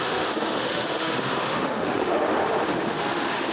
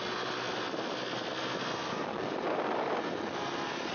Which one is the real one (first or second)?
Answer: second